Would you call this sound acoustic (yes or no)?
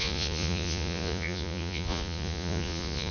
no